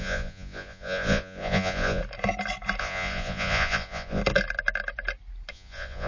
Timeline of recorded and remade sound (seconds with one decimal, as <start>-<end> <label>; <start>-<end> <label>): 0.0-2.0 remade; 2.0-2.8 recorded; 2.8-4.2 remade; 4.2-5.5 recorded; 5.5-6.1 remade